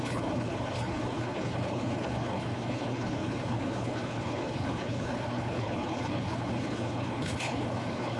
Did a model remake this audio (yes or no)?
yes